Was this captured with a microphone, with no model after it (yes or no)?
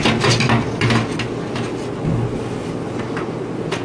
yes